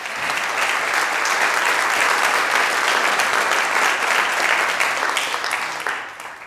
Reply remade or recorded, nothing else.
recorded